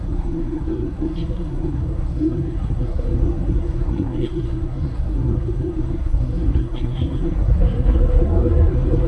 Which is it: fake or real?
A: fake